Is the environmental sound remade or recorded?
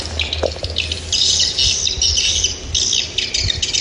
recorded